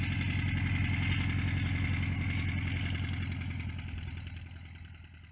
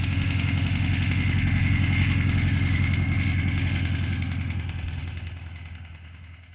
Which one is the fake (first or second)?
second